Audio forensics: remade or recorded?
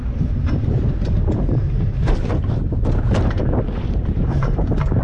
remade